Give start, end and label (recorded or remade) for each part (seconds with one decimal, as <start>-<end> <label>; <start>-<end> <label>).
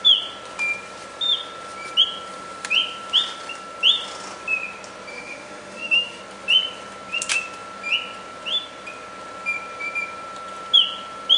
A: 0.0-5.1 recorded; 5.1-6.2 remade; 6.2-11.4 recorded